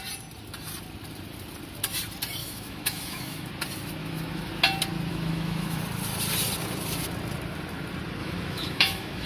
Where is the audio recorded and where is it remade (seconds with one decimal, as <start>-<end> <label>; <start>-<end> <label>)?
0.0-2.4 recorded; 2.4-3.5 remade; 3.5-4.0 recorded; 4.0-4.5 remade; 4.5-5.1 recorded; 5.1-5.8 remade; 5.8-8.2 recorded; 8.2-9.3 remade